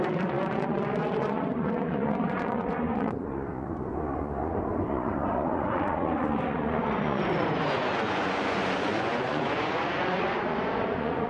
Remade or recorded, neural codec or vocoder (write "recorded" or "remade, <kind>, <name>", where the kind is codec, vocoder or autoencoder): remade, vocoder, Vocos